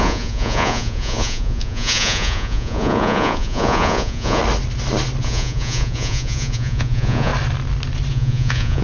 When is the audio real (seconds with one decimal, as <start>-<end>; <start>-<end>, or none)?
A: 4.4-5.2; 7.3-8.1